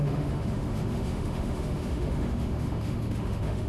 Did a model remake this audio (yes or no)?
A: yes